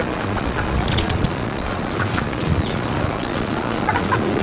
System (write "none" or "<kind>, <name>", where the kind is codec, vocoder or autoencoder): vocoder, Vocos